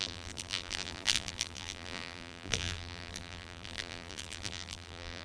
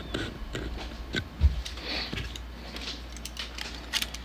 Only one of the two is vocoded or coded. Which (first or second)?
first